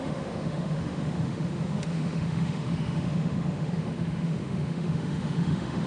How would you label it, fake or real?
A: fake